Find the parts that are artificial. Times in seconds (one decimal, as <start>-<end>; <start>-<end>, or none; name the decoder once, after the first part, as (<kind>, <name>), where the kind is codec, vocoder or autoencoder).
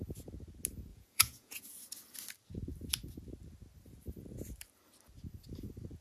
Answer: 0.9-1.7 (vocoder, Vocos)